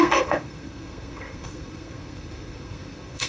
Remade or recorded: remade